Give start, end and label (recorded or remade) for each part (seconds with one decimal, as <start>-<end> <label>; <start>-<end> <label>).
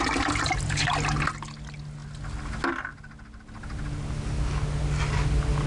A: 0.0-5.7 recorded